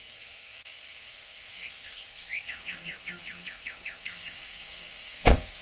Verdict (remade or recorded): remade